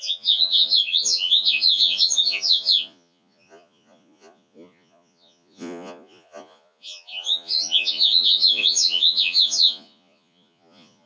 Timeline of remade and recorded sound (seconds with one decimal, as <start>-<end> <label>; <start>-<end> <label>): 0.0-11.1 remade